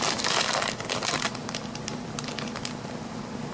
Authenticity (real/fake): real